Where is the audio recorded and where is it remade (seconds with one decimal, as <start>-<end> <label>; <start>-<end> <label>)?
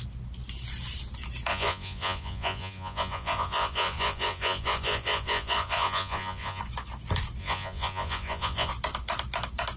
0.0-1.5 recorded; 1.5-6.6 remade; 6.6-7.4 recorded; 7.4-8.7 remade; 8.7-9.8 recorded